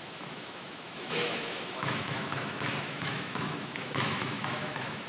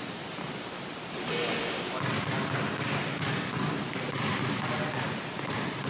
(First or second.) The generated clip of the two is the first